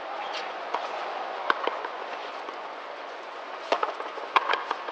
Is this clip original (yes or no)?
no